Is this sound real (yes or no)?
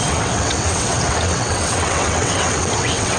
no